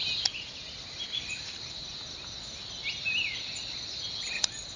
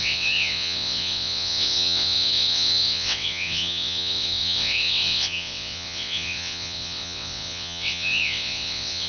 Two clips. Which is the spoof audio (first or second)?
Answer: second